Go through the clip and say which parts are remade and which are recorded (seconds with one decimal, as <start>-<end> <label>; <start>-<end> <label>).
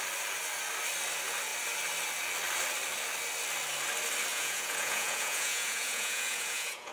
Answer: 0.0-4.3 recorded; 4.3-6.9 remade